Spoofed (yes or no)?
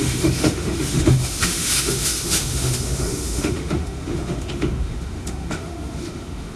yes